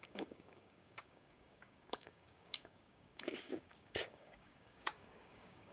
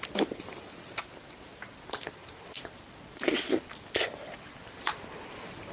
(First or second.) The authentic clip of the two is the second